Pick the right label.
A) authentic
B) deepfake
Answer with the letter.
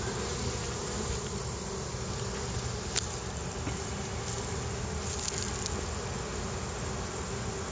A